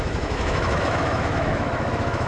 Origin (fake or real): fake